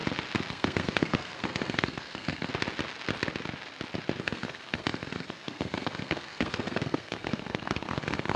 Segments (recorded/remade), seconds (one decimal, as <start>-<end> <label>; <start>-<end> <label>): 0.0-0.5 recorded; 0.5-2.5 remade; 2.5-4.2 recorded; 4.2-8.4 remade